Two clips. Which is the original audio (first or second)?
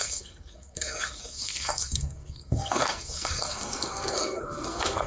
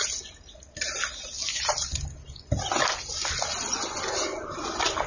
second